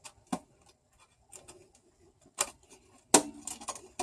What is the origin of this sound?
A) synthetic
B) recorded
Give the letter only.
B